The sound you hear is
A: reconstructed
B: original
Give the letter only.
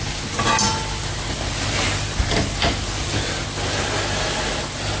B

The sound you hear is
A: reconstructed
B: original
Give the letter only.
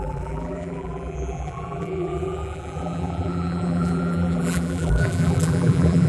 A